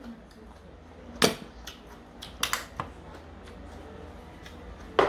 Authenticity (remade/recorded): recorded